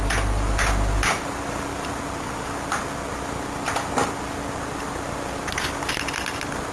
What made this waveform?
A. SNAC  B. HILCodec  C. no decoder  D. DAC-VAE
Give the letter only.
C